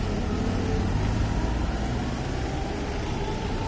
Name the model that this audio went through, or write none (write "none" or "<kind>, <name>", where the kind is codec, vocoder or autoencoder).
none